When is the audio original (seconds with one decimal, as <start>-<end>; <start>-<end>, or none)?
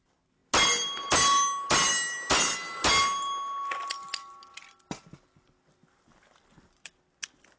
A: 0.0-7.6